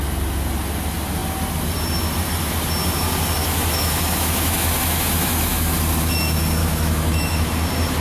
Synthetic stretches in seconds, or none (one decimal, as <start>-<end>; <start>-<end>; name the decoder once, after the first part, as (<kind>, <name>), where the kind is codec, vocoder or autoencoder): 3.4-5.7 (autoencoder, DAC-VAE); 6.6-7.5